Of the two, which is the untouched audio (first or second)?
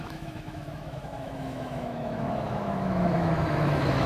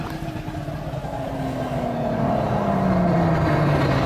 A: second